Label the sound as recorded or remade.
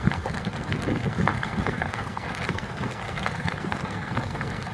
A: remade